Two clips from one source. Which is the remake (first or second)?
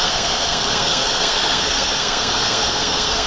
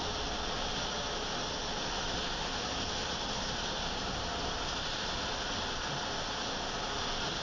first